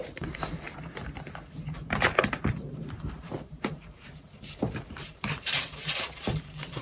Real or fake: fake